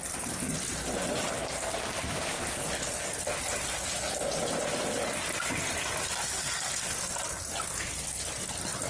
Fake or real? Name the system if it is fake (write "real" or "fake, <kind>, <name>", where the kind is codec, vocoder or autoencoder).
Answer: real